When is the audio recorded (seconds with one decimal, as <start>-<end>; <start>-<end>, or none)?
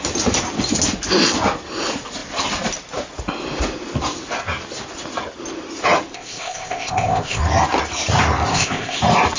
0.0-6.1; 7.4-8.5; 9.0-9.4